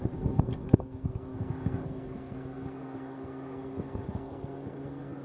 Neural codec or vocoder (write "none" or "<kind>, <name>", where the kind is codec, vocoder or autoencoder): codec, SNAC